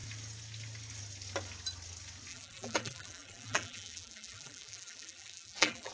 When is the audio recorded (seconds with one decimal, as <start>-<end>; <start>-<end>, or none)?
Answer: 0.0-2.3